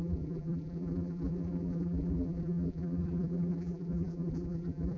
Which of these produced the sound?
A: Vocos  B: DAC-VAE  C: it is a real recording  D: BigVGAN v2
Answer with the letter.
D